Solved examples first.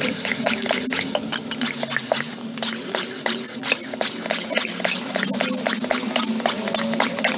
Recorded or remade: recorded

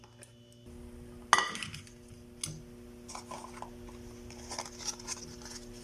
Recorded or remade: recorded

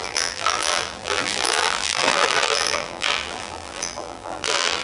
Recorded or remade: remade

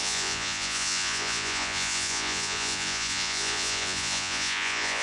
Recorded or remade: remade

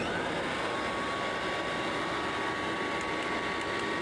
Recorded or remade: recorded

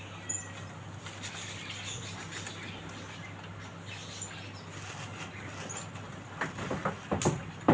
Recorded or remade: recorded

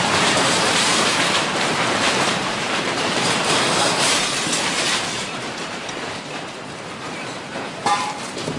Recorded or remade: remade